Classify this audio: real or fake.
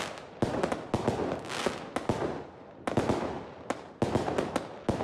real